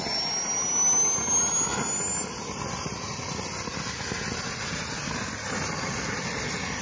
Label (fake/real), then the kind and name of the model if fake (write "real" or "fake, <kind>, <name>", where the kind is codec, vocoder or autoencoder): real